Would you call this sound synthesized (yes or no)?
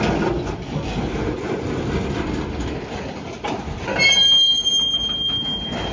no